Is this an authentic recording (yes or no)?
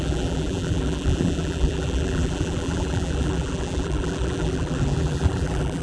no